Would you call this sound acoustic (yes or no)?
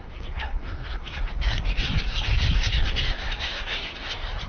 no